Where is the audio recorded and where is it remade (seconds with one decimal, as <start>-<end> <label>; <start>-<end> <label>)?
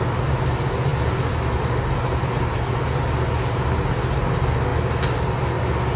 0.0-6.0 recorded